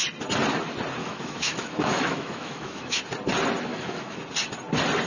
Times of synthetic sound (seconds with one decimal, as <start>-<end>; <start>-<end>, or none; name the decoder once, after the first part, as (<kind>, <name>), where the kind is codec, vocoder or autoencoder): 1.0-3.0 (autoencoder, DAC-VAE); 3.7-4.2